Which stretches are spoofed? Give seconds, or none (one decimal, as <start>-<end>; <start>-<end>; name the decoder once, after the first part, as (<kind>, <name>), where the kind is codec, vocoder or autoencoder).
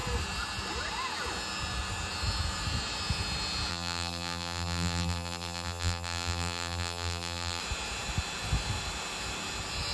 3.7-7.6 (vocoder, BigVGAN v2)